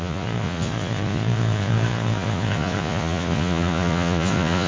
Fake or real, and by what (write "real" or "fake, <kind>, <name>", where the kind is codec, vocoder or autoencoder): fake, vocoder, Vocos